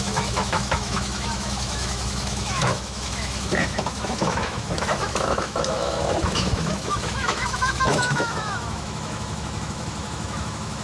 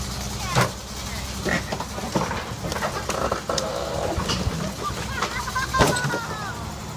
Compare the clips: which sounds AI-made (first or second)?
first